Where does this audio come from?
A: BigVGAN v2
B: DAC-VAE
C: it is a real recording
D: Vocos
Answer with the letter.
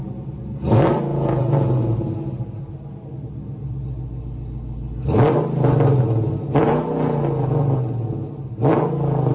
C